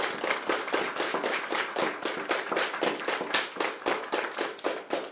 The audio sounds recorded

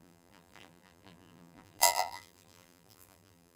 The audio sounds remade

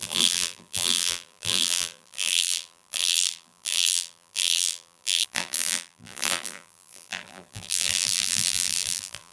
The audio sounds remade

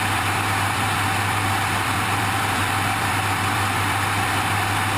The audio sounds remade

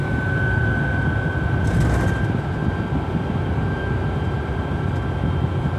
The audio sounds recorded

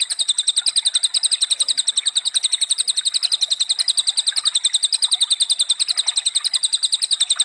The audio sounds recorded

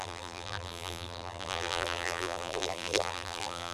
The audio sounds remade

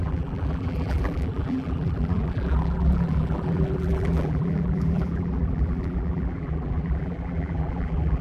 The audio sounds remade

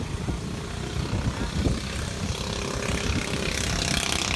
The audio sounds remade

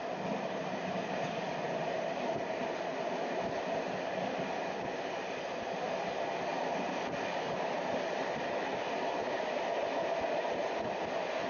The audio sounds remade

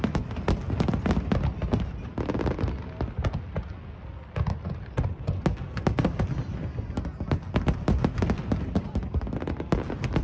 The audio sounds recorded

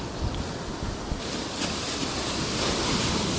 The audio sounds recorded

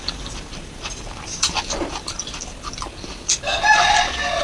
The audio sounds remade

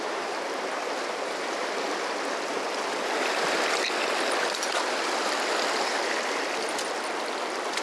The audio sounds remade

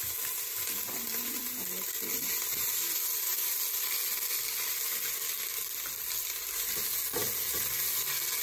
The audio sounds recorded